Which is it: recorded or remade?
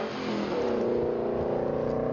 recorded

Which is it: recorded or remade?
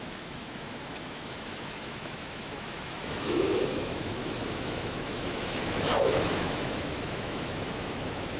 remade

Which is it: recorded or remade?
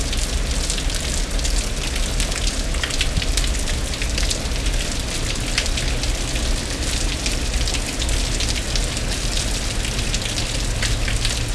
recorded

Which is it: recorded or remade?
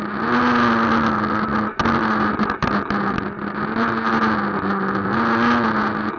recorded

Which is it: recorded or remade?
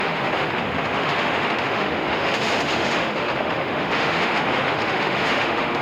remade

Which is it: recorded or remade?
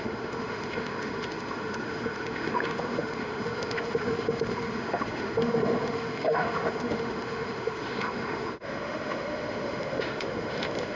remade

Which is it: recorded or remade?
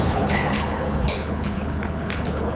remade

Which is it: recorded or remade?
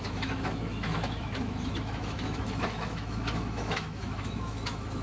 remade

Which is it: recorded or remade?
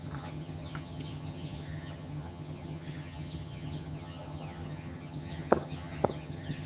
remade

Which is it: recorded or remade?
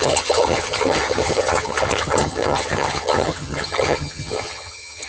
remade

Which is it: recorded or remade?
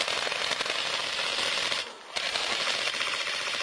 recorded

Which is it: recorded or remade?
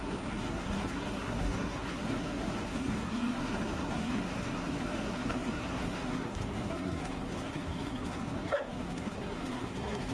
remade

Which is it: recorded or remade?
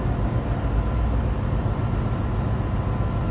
recorded